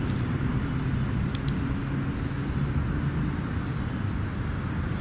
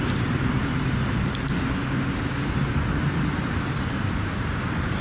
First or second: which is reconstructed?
second